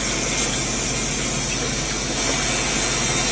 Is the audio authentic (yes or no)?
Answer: yes